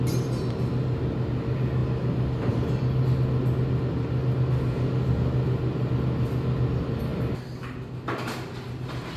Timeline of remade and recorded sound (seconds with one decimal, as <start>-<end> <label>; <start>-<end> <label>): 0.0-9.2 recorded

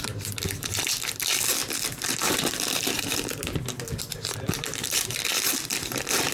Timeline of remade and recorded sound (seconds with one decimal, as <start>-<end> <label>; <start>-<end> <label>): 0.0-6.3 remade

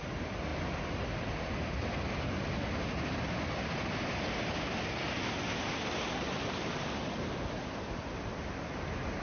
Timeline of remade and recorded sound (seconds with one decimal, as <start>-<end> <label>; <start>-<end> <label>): 0.0-9.2 recorded